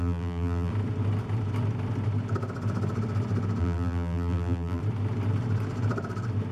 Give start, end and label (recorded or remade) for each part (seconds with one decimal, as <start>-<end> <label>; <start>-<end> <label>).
0.0-0.7 remade; 0.7-3.6 recorded; 3.6-4.8 remade; 4.8-6.5 recorded